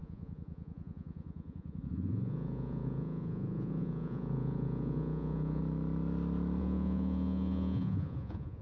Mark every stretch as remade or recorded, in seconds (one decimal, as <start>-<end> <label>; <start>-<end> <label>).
0.0-5.6 remade; 5.6-6.6 recorded; 6.6-8.6 remade